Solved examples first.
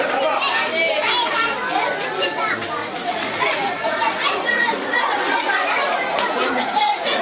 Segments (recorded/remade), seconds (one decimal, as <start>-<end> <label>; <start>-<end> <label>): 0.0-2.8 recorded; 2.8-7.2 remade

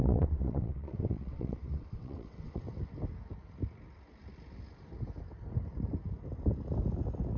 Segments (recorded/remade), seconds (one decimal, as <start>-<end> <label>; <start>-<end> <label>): 0.0-2.6 remade; 2.6-7.4 recorded

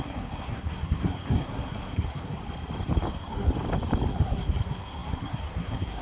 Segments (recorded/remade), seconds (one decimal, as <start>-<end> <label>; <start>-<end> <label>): 0.0-2.4 remade; 2.4-3.1 recorded; 3.1-3.5 remade; 3.5-4.1 recorded; 4.1-6.0 remade

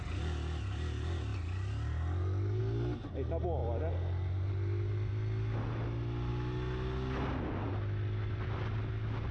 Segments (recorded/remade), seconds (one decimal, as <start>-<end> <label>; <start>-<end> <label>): 0.0-9.3 recorded

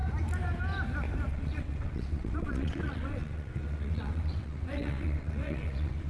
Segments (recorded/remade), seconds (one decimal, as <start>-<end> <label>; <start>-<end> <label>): 0.0-1.3 recorded; 1.3-6.1 remade